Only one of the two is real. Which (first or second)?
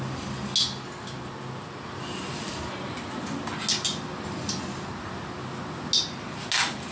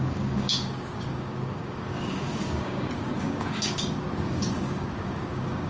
first